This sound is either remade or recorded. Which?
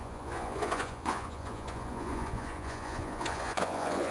remade